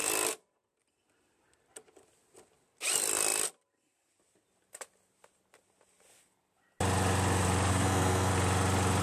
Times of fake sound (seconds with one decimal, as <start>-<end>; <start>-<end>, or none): 7.7-8.3

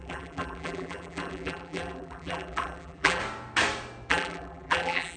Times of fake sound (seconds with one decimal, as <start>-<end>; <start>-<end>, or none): 0.0-3.2; 4.1-5.2

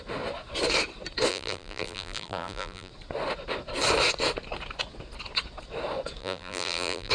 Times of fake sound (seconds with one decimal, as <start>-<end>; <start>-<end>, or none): 1.3-2.9; 6.2-7.1

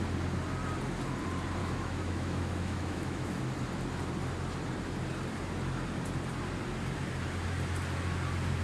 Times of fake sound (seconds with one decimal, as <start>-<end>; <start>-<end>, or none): 1.6-3.4

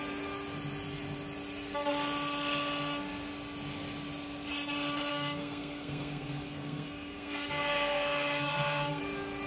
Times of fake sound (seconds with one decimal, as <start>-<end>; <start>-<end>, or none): 5.1-9.0

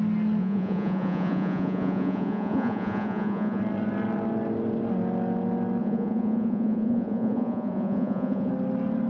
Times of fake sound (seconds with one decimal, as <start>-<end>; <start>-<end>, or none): 0.4-3.6; 5.8-8.5

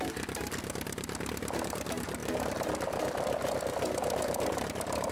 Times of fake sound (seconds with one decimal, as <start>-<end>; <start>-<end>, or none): none